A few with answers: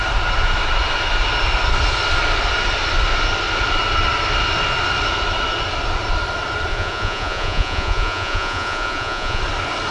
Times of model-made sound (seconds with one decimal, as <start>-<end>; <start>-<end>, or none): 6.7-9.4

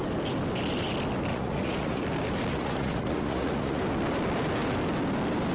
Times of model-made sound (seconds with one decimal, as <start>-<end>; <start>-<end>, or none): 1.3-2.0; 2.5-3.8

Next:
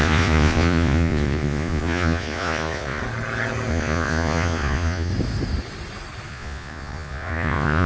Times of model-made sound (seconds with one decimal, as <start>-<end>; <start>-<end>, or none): 0.0-3.0; 3.7-5.1; 6.3-7.9

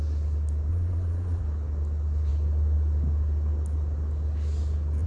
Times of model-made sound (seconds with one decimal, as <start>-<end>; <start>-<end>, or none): 0.7-1.4

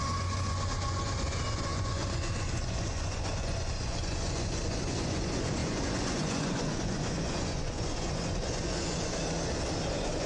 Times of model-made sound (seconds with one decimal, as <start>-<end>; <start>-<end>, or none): 0.0-9.2; 9.9-10.3

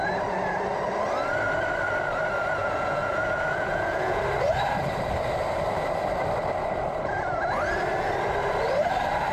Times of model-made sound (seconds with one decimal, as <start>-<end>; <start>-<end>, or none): 2.6-4.2